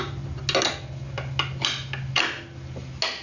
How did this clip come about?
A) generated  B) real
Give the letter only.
B